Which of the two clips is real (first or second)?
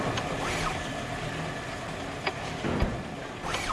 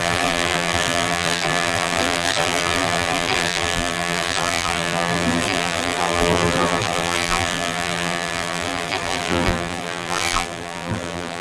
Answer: first